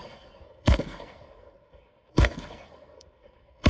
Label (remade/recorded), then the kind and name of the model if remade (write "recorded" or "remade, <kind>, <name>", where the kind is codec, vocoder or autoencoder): remade, codec, SNAC